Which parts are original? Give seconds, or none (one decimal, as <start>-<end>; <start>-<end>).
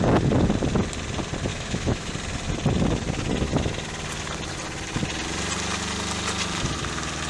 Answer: 0.0-1.5; 2.1-7.3